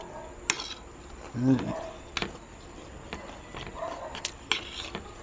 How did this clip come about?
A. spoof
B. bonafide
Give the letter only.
B